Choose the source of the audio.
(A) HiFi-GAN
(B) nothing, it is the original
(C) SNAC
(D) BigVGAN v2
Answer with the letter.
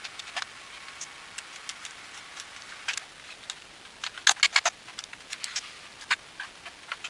B